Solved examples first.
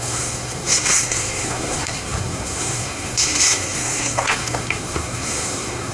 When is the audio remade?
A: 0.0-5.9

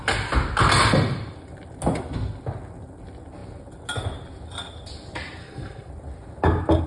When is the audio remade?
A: 5.4-5.9

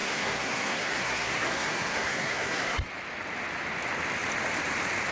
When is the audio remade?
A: 0.0-2.9

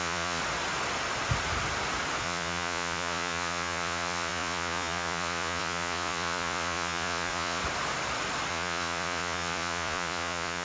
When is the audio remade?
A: 0.0-0.4; 2.2-7.6; 8.5-10.6